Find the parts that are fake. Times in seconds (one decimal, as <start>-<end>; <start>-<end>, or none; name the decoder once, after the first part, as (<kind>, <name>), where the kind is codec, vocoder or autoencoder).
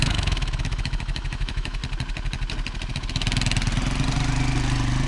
0.0-1.8 (autoencoder, DAC-VAE)